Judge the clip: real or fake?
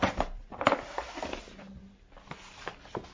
real